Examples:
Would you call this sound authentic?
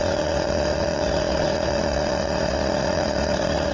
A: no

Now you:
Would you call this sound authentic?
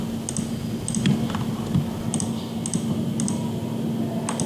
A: yes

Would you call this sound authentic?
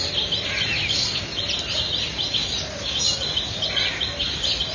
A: yes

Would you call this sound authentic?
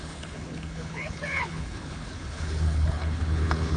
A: no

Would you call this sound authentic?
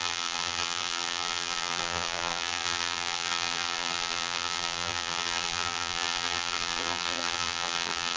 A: no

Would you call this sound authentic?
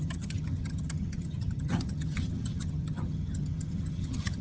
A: no